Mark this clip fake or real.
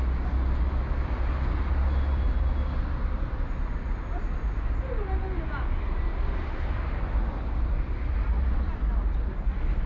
real